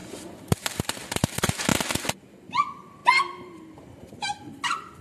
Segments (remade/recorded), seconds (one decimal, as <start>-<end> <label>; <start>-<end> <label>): 0.0-1.7 remade; 1.7-2.3 recorded; 2.3-3.0 remade; 3.0-4.1 recorded; 4.1-5.0 remade